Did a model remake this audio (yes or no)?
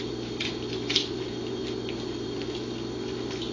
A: no